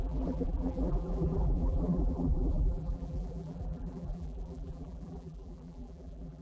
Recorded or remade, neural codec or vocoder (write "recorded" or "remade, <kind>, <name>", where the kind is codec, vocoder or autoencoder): remade, vocoder, BigVGAN v2